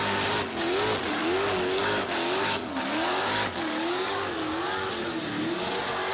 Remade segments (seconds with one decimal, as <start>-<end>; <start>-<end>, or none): 1.2-4.9